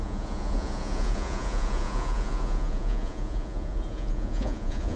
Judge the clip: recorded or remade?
remade